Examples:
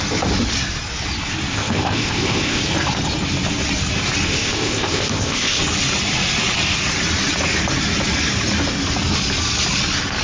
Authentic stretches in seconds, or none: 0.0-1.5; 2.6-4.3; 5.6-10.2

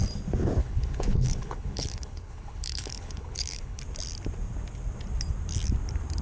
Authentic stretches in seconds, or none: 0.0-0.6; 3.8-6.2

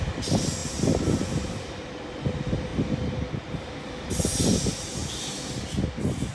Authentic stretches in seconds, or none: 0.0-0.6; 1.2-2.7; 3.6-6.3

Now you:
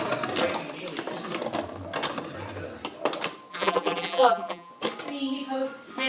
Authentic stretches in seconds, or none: 0.0-3.5; 4.7-6.1